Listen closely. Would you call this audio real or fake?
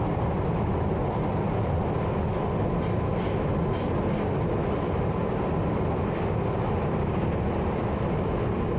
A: real